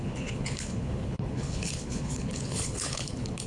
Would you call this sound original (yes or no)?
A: no